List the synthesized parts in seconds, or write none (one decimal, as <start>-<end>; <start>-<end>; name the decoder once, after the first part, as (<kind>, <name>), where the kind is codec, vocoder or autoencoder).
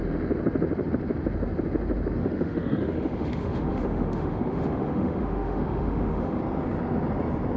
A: 2.2-6.4 (autoencoder, DAC-VAE)